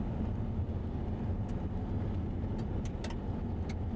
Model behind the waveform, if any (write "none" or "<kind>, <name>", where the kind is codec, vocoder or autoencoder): none